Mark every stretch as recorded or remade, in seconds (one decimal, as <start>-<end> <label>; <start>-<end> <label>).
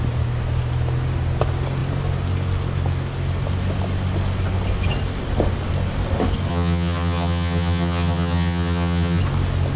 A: 0.0-6.5 recorded; 6.5-9.2 remade; 9.2-9.8 recorded